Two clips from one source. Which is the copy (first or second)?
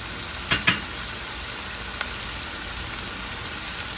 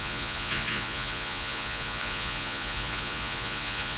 second